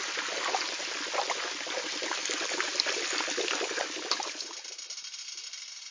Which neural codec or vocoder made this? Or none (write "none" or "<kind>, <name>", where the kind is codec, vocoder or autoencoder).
none